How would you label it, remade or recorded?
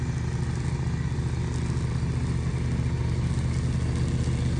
recorded